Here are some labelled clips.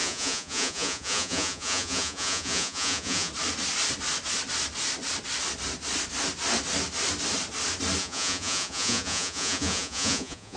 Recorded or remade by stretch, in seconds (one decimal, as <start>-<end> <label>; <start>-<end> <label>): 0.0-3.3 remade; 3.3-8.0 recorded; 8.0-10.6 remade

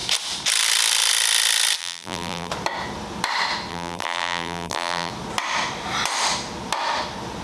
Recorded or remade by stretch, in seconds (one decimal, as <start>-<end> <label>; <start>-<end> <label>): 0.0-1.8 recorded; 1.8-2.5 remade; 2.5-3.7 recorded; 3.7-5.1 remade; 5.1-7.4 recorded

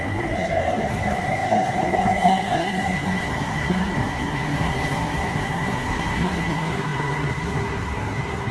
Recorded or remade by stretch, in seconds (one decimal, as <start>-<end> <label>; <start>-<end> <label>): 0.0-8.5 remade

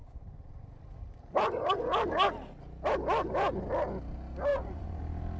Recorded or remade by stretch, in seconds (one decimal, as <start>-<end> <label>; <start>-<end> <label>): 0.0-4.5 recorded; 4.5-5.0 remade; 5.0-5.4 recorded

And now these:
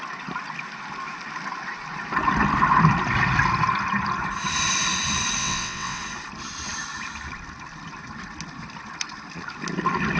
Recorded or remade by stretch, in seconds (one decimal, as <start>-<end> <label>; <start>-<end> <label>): 0.0-5.4 recorded; 5.4-6.0 remade; 6.0-10.2 recorded